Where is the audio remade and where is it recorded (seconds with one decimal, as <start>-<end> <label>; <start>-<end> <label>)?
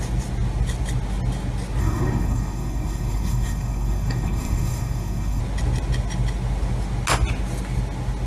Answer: 0.0-1.8 recorded; 1.8-5.4 remade; 5.4-8.3 recorded